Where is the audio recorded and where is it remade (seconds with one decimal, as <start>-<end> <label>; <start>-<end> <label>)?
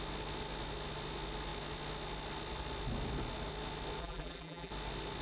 0.0-4.0 recorded; 4.0-4.7 remade; 4.7-5.2 recorded